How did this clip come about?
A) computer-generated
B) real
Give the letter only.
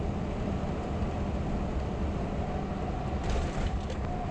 B